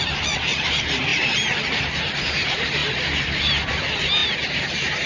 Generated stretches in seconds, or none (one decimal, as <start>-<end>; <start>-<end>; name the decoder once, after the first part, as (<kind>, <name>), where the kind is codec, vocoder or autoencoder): none